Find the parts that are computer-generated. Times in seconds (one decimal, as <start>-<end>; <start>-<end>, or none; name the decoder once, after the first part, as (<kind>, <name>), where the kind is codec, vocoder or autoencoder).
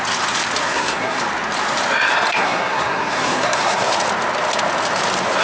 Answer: 0.6-1.2 (codec, SNAC); 2.3-3.9